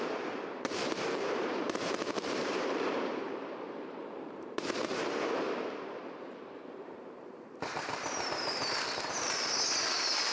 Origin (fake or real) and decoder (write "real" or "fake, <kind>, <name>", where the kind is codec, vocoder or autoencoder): fake, vocoder, BigVGAN v2